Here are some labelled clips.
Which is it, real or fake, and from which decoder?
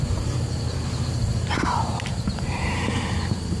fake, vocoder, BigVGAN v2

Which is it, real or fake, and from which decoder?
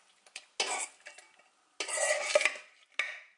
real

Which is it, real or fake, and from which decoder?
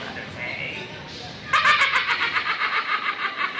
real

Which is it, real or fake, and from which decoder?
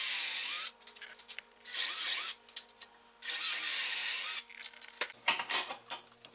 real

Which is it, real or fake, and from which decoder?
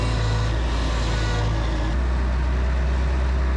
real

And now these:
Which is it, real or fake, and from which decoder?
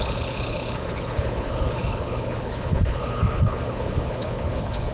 fake, codec, HILCodec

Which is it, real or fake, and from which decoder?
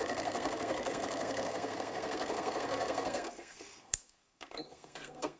fake, codec, SNAC